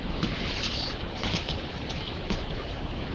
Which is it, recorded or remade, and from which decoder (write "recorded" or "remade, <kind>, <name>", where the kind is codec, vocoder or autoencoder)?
remade, autoencoder, DAC-VAE